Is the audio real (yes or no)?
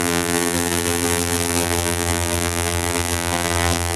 no